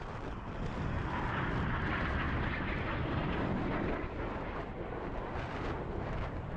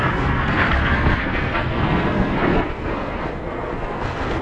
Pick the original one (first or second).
first